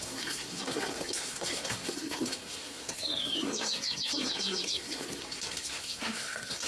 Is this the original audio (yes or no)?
no